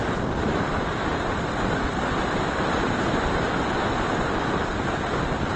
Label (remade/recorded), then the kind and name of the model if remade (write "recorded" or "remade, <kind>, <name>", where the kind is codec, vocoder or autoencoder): recorded